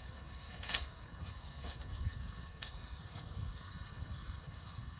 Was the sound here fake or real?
fake